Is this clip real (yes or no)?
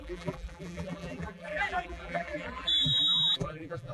no